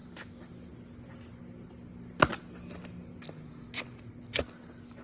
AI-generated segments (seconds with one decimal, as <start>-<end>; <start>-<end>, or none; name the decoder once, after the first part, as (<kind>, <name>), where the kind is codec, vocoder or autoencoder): none